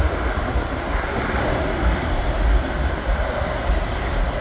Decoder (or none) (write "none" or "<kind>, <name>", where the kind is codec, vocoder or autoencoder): none